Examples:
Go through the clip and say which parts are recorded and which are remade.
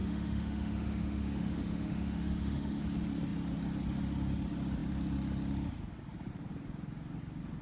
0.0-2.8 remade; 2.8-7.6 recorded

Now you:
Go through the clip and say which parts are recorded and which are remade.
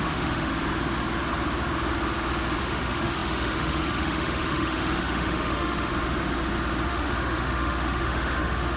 0.0-0.5 remade; 0.5-2.6 recorded; 2.6-5.9 remade; 5.9-6.9 recorded; 6.9-8.8 remade